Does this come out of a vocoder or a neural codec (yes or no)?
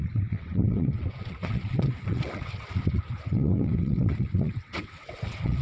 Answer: yes